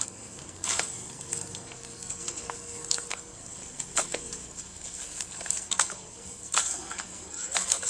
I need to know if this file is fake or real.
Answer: fake